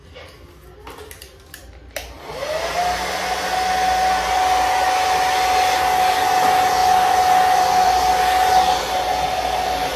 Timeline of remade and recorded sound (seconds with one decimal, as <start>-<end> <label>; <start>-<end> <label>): 0.0-10.0 recorded